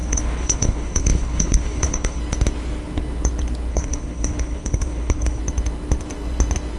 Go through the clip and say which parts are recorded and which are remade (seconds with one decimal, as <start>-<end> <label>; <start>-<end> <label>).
0.0-2.2 remade; 2.2-3.7 recorded; 3.7-5.4 remade; 5.4-6.8 recorded

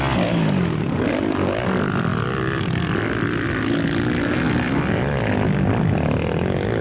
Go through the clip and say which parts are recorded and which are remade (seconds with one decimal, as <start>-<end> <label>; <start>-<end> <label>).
0.0-6.8 recorded

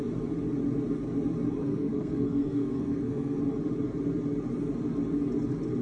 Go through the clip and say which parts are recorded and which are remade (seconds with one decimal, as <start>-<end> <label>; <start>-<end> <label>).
0.0-1.6 recorded; 1.6-3.4 remade; 3.4-5.8 recorded

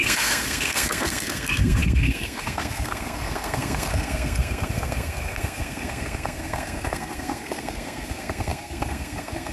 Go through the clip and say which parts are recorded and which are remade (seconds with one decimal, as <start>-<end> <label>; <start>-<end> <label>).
0.0-9.5 remade